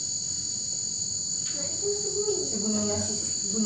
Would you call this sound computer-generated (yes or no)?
no